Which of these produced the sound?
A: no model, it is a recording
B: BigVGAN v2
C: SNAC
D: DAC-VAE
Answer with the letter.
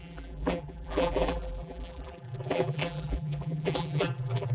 B